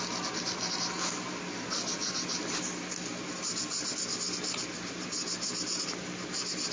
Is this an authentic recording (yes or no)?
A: yes